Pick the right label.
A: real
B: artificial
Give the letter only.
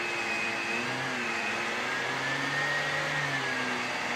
A